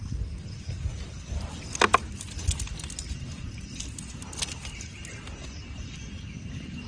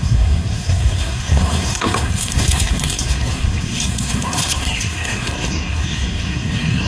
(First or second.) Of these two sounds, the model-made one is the second